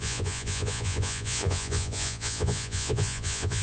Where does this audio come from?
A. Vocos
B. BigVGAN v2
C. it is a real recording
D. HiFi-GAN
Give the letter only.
A